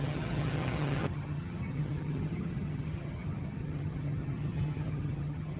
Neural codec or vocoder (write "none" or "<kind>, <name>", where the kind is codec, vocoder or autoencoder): vocoder, HiFi-GAN